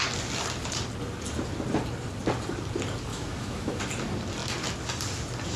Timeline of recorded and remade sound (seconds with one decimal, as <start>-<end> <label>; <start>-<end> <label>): 0.0-3.1 recorded; 3.1-3.8 remade; 3.8-5.6 recorded